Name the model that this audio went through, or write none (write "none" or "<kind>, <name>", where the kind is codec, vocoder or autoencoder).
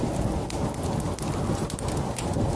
none